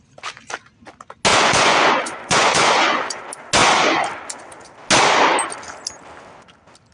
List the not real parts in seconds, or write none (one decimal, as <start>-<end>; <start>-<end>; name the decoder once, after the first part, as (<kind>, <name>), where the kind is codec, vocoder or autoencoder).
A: 1.3-3.2 (vocoder, Vocos)